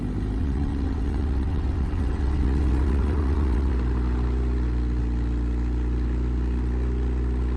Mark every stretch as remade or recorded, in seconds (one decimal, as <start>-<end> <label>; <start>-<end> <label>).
0.0-0.4 recorded; 0.4-3.7 remade; 3.7-7.6 recorded